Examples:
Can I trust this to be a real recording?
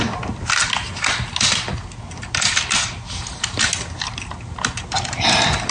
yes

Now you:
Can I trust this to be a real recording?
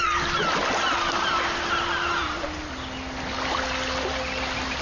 yes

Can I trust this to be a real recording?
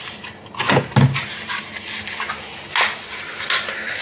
yes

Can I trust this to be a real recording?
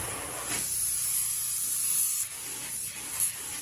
yes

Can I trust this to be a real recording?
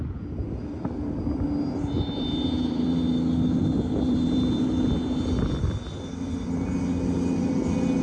yes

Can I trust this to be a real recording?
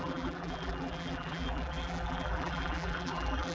no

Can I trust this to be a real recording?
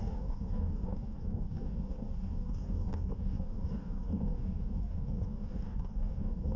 no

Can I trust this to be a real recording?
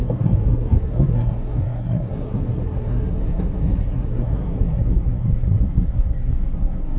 no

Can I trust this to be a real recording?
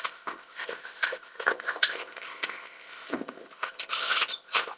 no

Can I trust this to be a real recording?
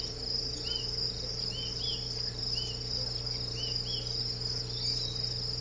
yes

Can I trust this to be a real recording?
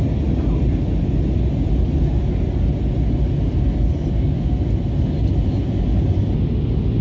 yes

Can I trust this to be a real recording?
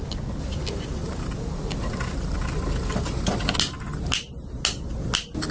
yes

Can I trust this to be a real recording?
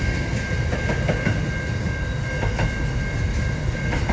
yes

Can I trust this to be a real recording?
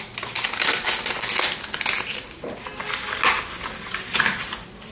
yes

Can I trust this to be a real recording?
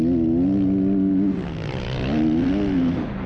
yes